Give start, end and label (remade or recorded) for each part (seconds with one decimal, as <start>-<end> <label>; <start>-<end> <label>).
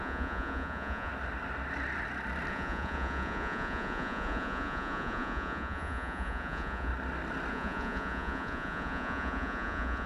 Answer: 0.0-1.1 remade; 1.1-2.5 recorded; 2.5-6.9 remade; 6.9-7.5 recorded; 7.5-10.1 remade